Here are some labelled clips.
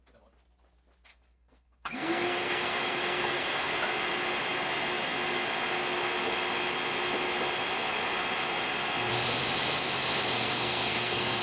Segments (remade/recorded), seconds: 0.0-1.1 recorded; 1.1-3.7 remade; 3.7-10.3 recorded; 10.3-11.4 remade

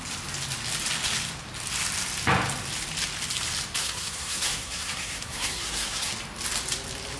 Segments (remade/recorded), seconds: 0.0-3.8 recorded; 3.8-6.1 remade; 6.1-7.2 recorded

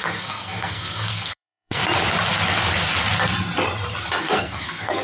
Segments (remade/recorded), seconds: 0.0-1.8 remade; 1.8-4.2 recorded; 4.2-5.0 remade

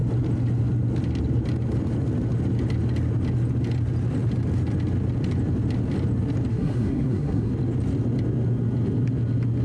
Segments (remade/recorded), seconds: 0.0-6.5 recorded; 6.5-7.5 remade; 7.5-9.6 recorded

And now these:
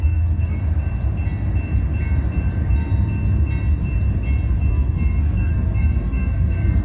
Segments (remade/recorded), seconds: 0.0-0.6 remade; 0.6-4.7 recorded; 4.7-6.8 remade

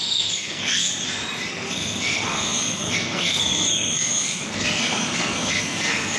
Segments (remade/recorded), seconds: 0.0-0.9 remade; 0.9-1.5 recorded; 1.5-6.2 remade